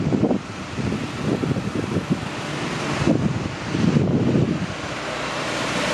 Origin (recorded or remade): recorded